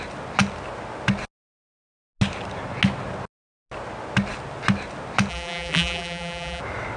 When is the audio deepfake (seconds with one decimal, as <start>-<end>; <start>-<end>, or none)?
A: 5.3-6.6

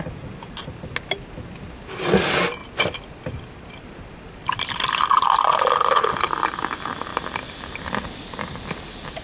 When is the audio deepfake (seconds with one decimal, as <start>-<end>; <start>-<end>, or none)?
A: 2.6-6.1; 7.1-9.2

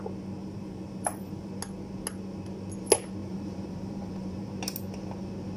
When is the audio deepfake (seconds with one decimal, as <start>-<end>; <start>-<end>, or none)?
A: 0.4-1.5; 3.2-4.4